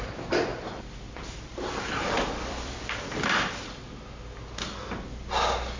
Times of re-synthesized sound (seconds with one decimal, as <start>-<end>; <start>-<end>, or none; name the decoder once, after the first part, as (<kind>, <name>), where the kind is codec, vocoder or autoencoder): 0.5-4.0 (vocoder, BigVGAN v2)